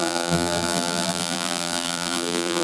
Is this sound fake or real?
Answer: fake